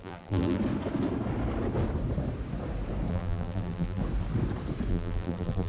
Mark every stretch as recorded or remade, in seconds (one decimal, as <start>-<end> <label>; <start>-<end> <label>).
0.0-0.6 remade; 0.6-3.1 recorded; 3.1-4.0 remade; 4.0-4.9 recorded; 4.9-5.7 remade